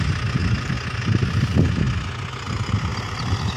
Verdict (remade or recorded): recorded